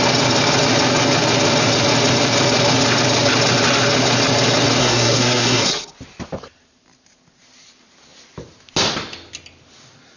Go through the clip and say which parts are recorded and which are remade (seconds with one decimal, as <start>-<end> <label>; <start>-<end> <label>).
0.0-4.8 recorded; 4.8-5.7 remade; 5.7-10.2 recorded